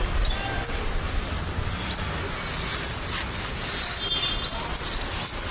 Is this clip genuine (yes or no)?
yes